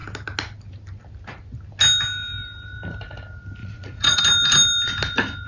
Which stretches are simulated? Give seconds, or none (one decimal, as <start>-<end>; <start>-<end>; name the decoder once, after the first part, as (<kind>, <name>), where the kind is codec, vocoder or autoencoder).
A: 3.6-4.2 (vocoder, Vocos)